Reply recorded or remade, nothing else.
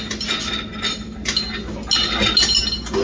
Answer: recorded